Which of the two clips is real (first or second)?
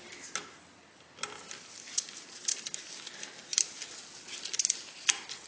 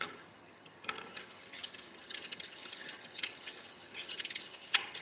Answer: first